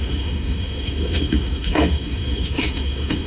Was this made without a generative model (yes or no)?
no